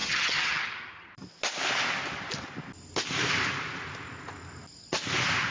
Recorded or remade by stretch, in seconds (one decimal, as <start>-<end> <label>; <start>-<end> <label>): 0.0-1.1 remade; 1.1-5.5 recorded